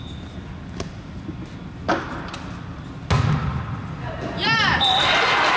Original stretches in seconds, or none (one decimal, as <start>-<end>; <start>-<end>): 0.0-5.6